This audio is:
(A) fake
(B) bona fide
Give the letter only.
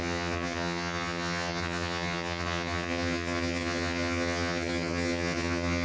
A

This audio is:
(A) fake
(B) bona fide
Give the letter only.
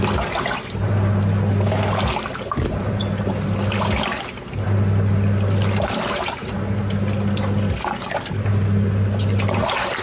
B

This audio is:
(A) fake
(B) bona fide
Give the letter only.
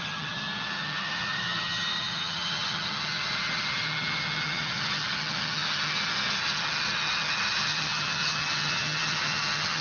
A